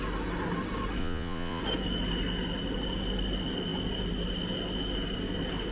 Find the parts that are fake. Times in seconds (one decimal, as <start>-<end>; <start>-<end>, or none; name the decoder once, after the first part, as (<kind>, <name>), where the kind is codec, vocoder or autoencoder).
1.0-1.6 (vocoder, Vocos)